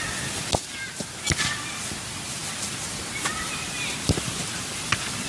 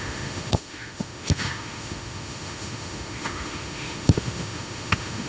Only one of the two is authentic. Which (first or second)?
first